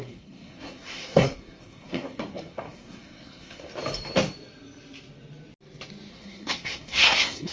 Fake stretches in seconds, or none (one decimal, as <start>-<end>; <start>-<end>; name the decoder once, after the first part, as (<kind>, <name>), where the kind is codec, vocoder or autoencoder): 0.0-3.7 (codec, SNAC); 6.1-7.5